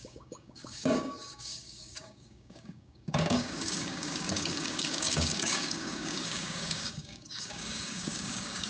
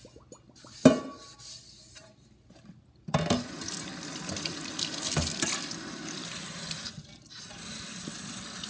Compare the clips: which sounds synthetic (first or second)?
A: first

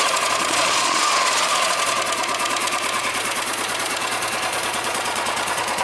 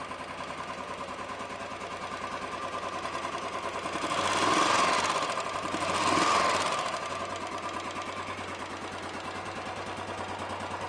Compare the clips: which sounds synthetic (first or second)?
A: first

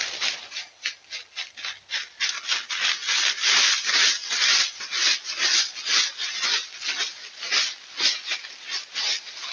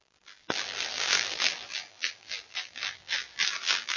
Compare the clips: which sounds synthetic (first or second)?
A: second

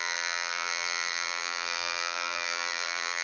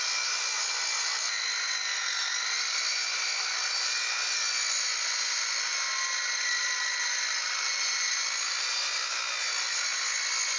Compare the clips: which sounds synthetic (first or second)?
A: first